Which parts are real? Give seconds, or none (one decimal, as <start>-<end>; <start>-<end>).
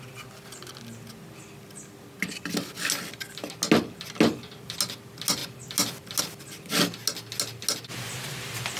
0.0-8.8